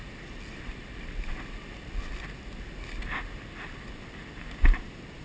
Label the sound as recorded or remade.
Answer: recorded